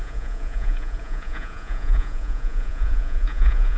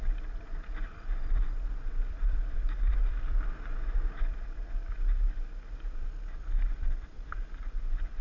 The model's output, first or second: first